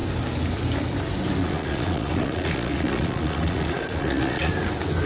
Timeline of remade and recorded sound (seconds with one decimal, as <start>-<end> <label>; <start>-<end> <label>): 0.0-1.4 recorded; 1.4-4.5 remade; 4.5-5.1 recorded